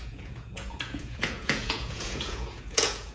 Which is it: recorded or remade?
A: remade